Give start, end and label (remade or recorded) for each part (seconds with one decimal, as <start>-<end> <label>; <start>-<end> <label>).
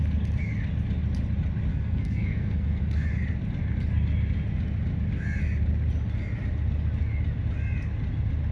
0.0-1.7 recorded; 1.7-2.8 remade; 2.8-8.5 recorded